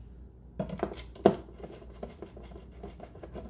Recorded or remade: recorded